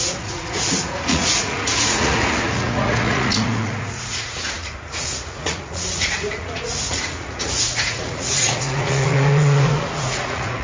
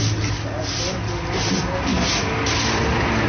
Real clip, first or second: second